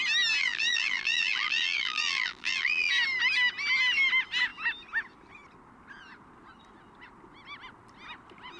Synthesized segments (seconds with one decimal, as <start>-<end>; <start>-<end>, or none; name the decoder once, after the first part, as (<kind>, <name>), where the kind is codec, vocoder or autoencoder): 0.4-2.9 (vocoder, BigVGAN v2)